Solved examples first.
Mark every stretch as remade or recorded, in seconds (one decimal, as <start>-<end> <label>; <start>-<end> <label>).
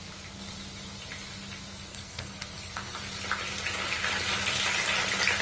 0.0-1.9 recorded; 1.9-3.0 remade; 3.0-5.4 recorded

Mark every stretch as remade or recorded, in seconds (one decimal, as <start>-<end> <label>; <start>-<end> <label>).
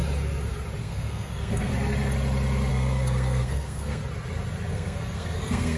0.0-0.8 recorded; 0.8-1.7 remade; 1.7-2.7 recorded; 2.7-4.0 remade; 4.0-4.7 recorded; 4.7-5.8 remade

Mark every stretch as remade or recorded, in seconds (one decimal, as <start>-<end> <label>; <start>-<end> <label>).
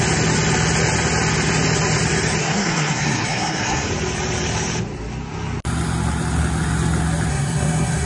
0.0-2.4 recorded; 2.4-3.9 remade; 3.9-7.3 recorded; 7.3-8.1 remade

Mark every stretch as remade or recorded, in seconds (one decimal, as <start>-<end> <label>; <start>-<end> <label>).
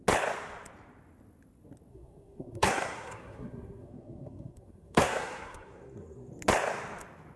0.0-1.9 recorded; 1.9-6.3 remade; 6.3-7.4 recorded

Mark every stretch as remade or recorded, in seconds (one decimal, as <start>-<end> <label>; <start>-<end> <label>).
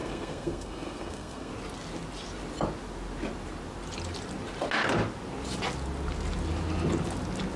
0.0-1.5 remade; 1.5-7.6 recorded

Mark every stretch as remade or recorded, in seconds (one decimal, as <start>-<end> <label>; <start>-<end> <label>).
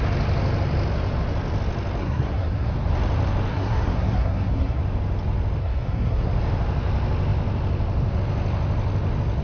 0.0-2.0 recorded; 2.0-2.7 remade; 2.7-3.5 recorded; 3.5-4.8 remade; 4.8-5.6 recorded; 5.6-6.3 remade; 6.3-9.4 recorded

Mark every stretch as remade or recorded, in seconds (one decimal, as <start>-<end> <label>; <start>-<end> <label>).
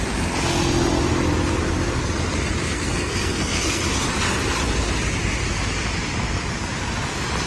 0.0-2.7 recorded; 2.7-3.8 remade; 3.8-7.5 recorded